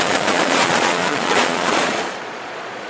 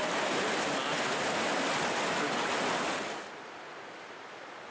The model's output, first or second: first